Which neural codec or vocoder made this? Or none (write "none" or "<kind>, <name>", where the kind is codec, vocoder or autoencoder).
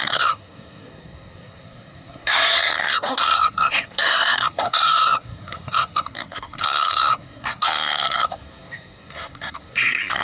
codec, SNAC